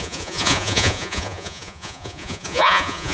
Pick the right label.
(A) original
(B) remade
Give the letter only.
B